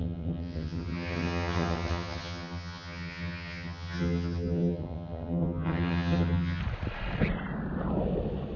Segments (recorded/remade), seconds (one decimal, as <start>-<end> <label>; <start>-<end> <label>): 0.0-6.6 remade; 6.6-8.6 recorded